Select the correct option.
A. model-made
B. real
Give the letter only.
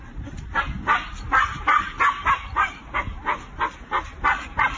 B